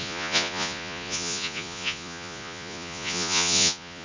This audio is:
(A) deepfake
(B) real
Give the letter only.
A